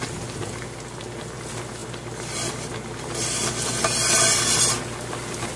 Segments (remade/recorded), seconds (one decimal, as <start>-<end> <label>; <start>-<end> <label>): 0.0-5.6 recorded